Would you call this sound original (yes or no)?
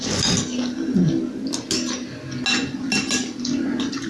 yes